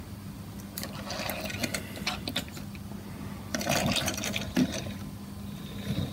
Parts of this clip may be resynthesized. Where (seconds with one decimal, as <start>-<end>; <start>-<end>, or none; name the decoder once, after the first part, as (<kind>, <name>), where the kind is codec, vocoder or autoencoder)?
none